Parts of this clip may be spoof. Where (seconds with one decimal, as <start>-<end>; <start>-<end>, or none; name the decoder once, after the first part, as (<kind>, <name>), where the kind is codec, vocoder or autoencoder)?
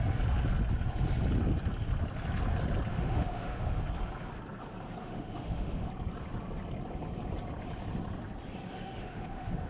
2.9-3.8 (autoencoder, DAC-VAE); 5.0-5.9; 8.7-9.7